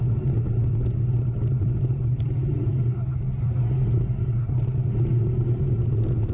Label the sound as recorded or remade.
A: recorded